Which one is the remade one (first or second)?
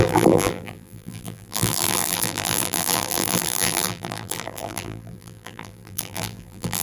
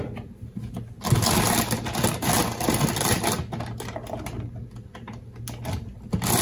first